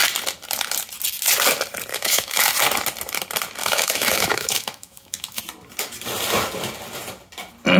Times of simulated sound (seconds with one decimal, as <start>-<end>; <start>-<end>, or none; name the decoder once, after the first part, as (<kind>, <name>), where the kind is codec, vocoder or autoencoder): 1.9-2.5 (autoencoder, DAC-VAE); 3.6-5.4